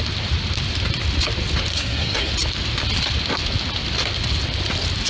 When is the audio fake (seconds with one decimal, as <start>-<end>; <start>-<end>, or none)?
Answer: 1.7-2.3